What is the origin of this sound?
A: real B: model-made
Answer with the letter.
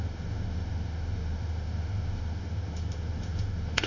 B